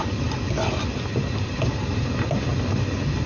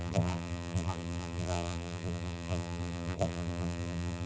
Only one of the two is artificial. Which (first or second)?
second